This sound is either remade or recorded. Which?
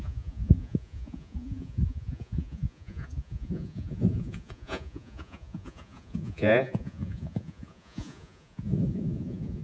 remade